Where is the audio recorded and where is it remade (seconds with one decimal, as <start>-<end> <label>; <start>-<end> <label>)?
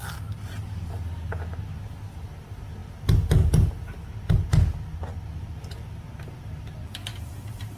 0.0-7.1 recorded; 7.1-7.8 remade